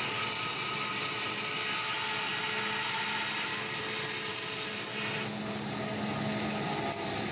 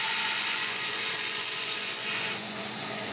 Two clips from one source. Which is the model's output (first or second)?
second